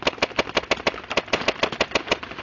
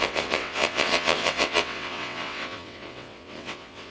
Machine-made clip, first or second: second